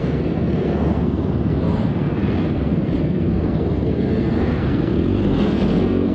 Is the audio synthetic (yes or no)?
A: yes